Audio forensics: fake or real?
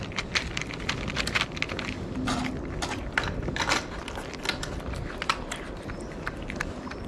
real